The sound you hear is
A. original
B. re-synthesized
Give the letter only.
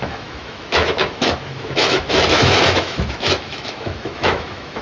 B